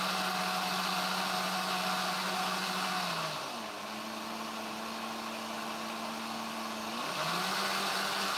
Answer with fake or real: real